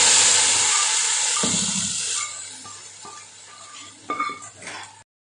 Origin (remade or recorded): recorded